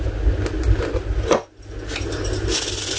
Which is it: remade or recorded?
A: recorded